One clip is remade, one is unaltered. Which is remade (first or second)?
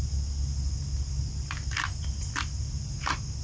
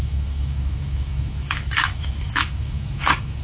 second